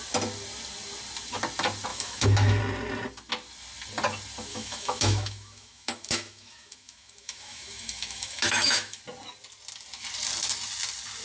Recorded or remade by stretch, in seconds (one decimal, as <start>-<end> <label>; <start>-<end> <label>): 0.0-1.9 recorded; 1.9-2.6 remade; 2.6-4.5 recorded; 4.5-9.0 remade; 9.0-11.2 recorded